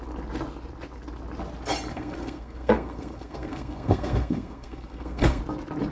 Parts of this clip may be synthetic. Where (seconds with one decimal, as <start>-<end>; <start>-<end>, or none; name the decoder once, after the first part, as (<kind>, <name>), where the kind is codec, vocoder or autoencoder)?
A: 1.9-5.4 (codec, SNAC)